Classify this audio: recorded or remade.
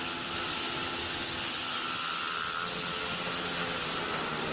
recorded